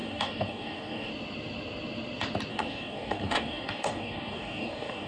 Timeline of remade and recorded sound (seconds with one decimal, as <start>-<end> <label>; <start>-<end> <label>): 0.0-1.1 remade; 1.1-2.5 recorded; 2.5-5.1 remade